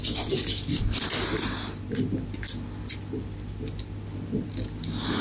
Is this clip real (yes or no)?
yes